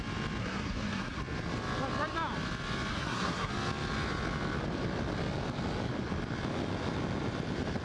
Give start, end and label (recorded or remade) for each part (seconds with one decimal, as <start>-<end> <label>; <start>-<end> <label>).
0.0-0.4 recorded; 0.4-1.2 remade; 1.2-2.9 recorded; 2.9-3.5 remade; 3.5-7.8 recorded